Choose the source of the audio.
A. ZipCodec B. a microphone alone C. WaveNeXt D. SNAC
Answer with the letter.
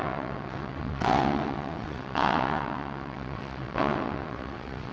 C